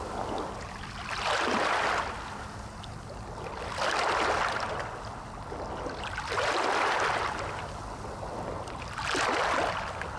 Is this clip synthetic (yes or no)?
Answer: no